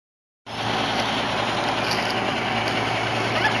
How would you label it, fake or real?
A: real